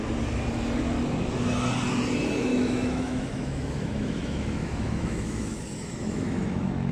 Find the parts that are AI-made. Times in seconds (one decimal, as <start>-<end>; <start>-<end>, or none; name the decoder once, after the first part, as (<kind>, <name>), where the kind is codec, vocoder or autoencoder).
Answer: 2.5-6.9 (autoencoder, DAC-VAE)